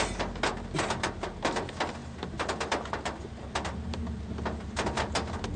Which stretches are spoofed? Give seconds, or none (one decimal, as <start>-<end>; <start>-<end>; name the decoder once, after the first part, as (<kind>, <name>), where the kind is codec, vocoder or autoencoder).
none